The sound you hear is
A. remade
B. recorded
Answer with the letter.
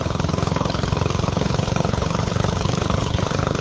A